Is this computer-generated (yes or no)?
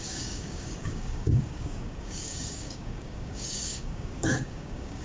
yes